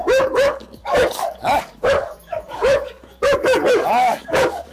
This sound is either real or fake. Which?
fake